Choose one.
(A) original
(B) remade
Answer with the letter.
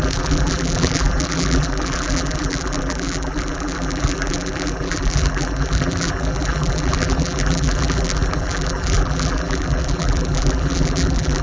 B